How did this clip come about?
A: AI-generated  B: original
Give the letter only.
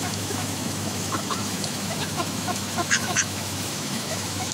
A